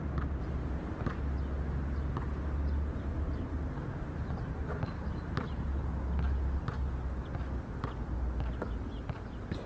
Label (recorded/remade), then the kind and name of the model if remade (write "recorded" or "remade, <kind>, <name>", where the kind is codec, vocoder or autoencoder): recorded